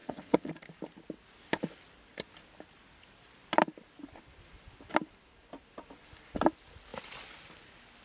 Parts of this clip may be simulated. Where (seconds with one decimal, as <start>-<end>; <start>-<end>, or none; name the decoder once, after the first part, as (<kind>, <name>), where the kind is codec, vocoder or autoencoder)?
0.0-0.5 (vocoder, HiFi-GAN)